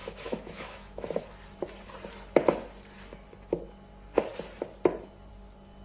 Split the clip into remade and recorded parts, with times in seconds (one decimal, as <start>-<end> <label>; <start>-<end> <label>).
0.0-1.2 remade; 1.2-5.8 recorded

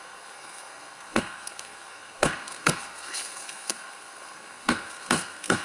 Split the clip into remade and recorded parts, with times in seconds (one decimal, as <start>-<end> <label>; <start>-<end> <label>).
0.0-5.6 remade